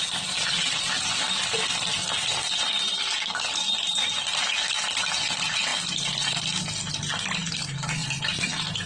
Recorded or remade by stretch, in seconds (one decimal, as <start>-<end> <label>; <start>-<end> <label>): 0.0-8.9 recorded

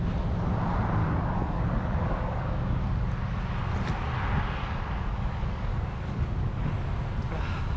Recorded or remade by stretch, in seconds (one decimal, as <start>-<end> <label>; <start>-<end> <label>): 0.0-1.0 recorded; 1.0-2.8 remade; 2.8-4.6 recorded; 4.6-6.7 remade; 6.7-7.8 recorded

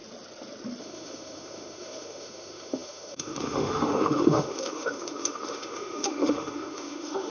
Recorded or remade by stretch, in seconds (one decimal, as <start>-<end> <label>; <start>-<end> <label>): 0.0-0.8 recorded; 0.8-7.3 remade

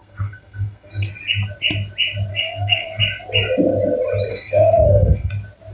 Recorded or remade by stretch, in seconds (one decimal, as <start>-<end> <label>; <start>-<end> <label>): 0.0-1.1 remade; 1.1-2.3 recorded; 2.3-3.0 remade; 3.0-4.3 recorded; 4.3-5.3 remade; 5.3-5.7 recorded